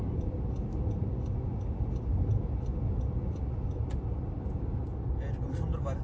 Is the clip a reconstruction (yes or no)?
no